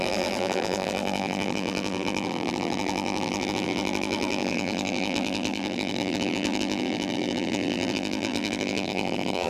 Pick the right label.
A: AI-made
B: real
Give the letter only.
A